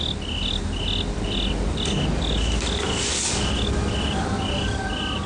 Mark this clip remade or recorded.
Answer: recorded